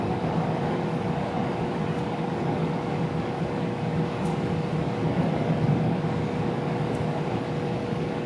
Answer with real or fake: fake